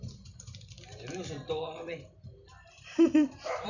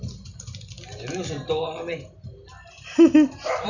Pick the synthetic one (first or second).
first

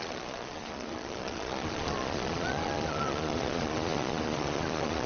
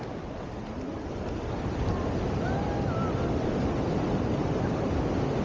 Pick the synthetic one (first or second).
first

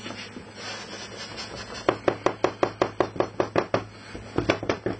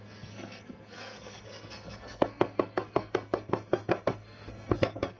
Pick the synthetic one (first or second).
second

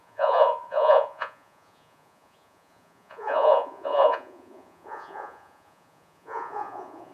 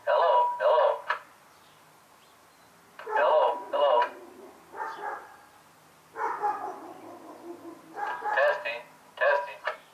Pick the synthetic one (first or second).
first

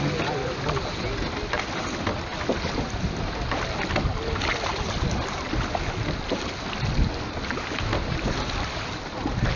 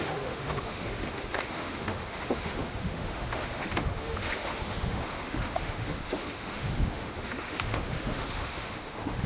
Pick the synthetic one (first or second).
second